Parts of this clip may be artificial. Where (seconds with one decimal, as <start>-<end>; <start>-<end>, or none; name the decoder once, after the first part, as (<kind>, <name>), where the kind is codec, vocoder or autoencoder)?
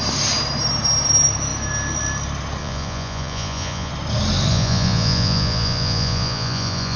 2.6-3.9 (vocoder, Vocos); 4.5-7.0